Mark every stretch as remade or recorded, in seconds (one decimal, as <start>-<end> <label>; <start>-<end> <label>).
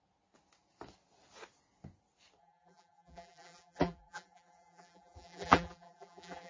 0.0-2.4 recorded; 2.4-6.5 remade